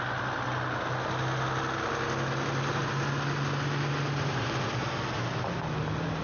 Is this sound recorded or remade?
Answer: recorded